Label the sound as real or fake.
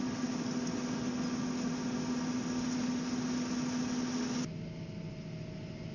real